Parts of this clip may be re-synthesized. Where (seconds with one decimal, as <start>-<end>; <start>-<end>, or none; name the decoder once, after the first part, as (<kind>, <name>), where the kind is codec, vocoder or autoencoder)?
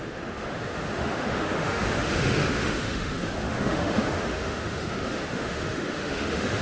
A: 0.0-6.6 (autoencoder, DAC-VAE)